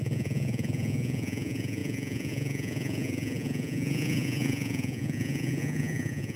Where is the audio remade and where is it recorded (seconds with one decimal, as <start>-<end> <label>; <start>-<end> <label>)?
0.0-6.4 remade